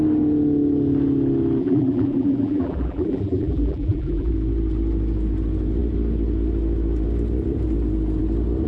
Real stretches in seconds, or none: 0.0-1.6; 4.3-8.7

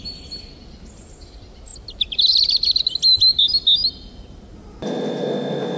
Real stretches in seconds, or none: 0.0-5.8

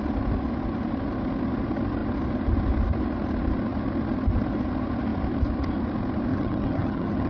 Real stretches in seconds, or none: 0.0-6.3